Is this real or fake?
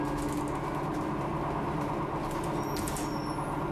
real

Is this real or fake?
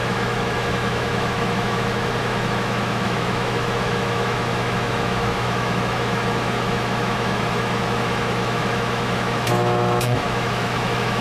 fake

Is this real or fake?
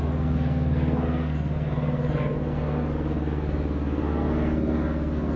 fake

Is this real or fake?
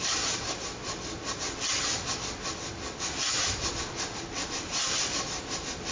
fake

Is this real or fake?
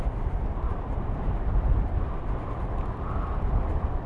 real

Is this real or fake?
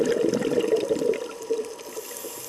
real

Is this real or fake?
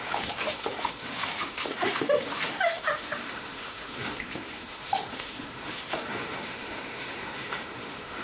fake